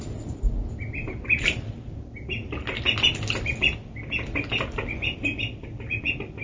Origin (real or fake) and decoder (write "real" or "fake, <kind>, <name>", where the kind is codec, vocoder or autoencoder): real